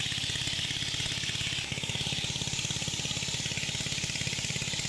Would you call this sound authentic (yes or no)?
yes